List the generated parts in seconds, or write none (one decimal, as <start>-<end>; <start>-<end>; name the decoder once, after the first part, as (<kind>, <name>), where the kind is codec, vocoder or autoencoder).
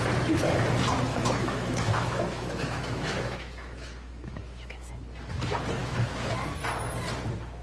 1.1-4.9 (autoencoder, DAC-VAE); 5.8-6.3